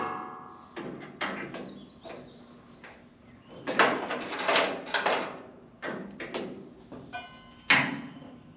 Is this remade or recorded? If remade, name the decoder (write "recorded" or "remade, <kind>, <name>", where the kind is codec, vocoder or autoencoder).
recorded